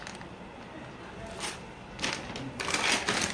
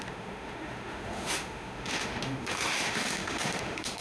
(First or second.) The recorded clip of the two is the first